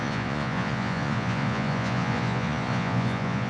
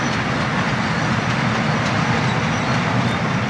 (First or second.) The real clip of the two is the second